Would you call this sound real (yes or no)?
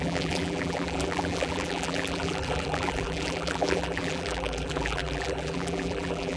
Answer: no